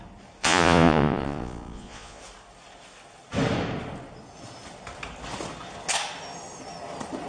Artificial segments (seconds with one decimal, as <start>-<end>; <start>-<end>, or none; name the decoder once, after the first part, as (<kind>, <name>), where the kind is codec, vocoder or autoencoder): 0.4-2.2 (vocoder, Vocos)